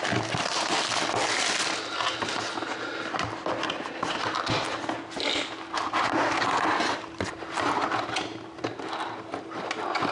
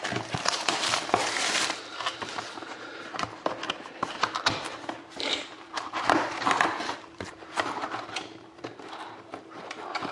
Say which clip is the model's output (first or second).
second